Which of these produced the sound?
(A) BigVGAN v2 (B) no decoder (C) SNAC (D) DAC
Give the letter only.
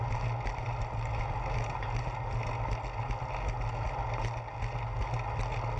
B